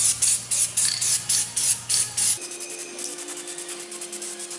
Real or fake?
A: real